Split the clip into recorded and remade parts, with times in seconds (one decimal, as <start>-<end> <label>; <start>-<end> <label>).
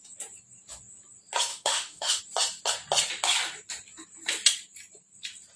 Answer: 0.0-1.5 recorded; 1.5-2.2 remade; 2.2-5.6 recorded